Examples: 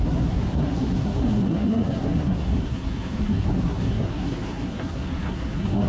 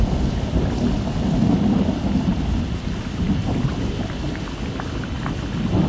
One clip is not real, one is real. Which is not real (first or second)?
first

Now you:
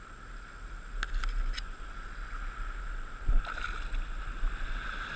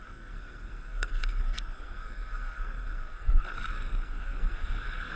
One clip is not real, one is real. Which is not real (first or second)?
second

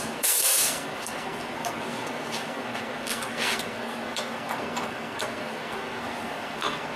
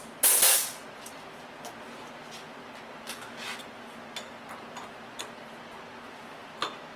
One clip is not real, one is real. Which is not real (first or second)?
first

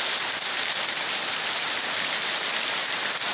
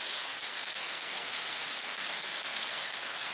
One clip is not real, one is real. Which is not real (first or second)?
second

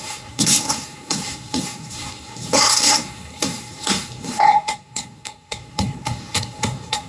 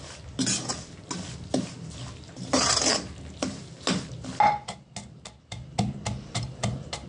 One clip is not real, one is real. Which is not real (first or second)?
first